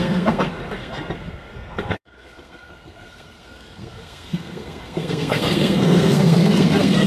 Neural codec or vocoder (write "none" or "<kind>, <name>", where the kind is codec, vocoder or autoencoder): codec, SNAC